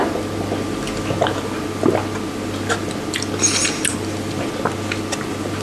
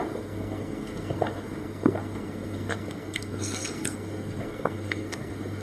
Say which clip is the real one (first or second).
first